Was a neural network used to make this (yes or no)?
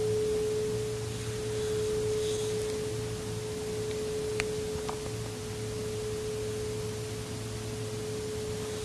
no